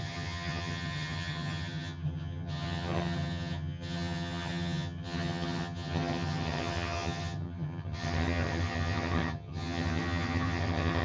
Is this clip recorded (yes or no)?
no